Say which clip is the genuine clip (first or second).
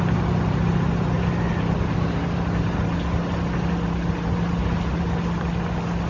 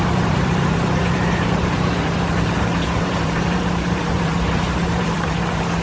first